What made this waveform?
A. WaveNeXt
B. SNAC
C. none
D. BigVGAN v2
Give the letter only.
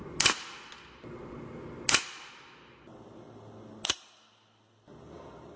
C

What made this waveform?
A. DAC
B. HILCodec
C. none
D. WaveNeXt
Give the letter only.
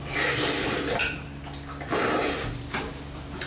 C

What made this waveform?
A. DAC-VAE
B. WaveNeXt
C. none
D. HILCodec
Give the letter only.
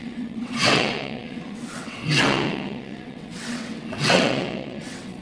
B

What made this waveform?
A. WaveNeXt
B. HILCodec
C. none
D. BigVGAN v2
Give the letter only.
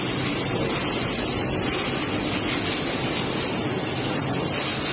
C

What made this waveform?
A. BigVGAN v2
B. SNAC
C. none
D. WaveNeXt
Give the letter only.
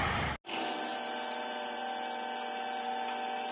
C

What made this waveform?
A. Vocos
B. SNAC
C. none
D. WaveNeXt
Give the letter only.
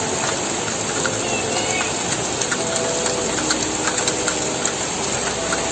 C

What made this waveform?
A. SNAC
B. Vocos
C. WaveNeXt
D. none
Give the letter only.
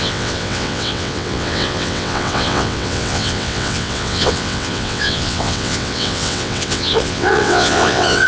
C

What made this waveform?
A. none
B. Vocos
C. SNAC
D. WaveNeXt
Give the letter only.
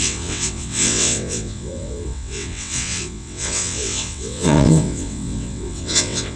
D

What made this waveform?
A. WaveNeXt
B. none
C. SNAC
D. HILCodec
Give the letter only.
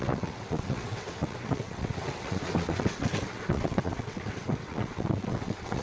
A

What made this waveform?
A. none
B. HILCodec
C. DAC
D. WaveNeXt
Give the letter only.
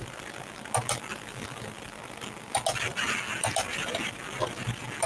A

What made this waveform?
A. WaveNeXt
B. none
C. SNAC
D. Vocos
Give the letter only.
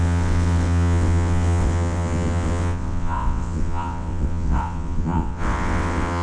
A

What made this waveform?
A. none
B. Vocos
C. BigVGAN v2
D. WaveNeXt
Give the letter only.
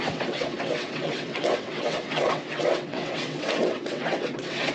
D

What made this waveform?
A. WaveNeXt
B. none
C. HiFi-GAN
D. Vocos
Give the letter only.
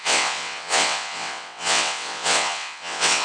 A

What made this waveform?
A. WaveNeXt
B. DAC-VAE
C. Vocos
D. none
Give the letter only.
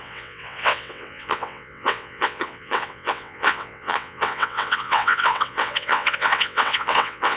A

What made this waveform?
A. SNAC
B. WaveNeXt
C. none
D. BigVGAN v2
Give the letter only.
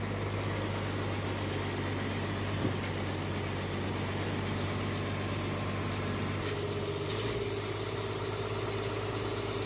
C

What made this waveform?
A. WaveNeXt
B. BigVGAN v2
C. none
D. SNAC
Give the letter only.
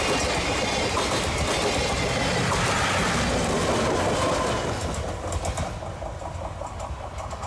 C